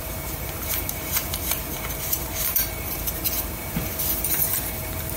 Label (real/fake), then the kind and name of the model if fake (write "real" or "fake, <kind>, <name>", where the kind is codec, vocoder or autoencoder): fake, vocoder, BigVGAN v2